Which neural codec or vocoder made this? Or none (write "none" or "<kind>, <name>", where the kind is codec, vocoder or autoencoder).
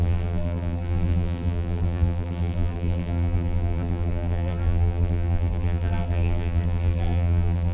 vocoder, BigVGAN v2